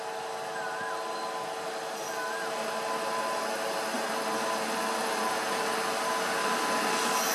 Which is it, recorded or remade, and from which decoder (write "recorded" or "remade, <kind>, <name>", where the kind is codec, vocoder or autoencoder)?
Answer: recorded